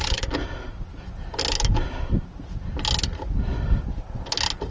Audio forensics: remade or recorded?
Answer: recorded